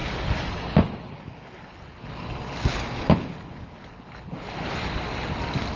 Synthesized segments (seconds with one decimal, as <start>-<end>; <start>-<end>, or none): none